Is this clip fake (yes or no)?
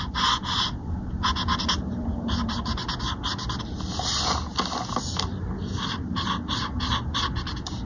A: no